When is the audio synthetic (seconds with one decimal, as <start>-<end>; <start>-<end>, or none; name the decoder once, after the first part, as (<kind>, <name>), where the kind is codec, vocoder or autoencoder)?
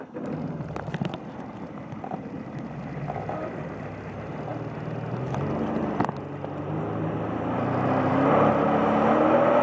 none